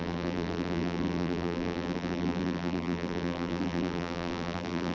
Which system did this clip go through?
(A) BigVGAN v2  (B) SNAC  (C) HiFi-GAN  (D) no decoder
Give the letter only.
A